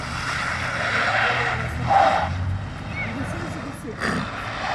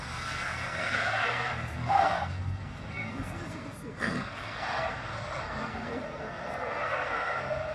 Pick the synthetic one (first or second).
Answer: second